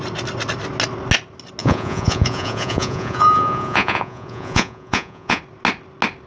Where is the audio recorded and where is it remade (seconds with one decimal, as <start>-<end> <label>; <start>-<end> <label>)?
0.0-1.6 recorded; 1.6-5.4 remade; 5.4-6.3 recorded